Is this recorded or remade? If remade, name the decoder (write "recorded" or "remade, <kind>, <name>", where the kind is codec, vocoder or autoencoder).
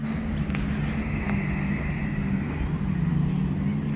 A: recorded